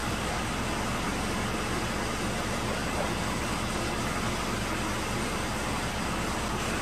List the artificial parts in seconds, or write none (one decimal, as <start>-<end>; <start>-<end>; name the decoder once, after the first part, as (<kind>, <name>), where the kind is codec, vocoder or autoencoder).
0.0-0.5 (codec, DAC)